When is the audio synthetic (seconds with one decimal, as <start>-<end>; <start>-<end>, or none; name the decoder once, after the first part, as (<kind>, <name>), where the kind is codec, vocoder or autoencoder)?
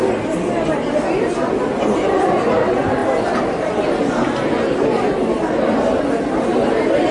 3.0-4.1 (vocoder, BigVGAN v2)